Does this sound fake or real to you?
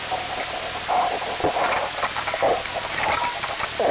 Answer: real